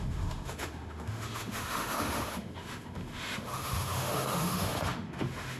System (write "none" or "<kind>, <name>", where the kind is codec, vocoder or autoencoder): autoencoder, DAC-VAE